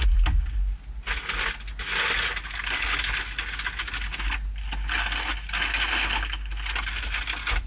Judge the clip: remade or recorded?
recorded